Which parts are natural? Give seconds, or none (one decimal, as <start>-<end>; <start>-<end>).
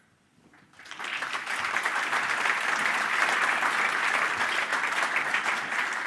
0.0-1.1; 2.9-6.1